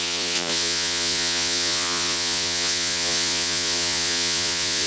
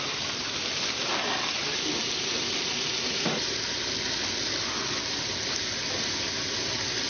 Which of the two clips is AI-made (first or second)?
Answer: first